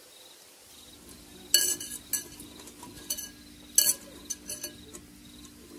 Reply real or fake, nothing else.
real